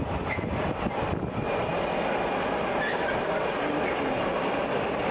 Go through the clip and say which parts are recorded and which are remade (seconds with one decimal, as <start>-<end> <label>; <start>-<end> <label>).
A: 0.0-5.1 recorded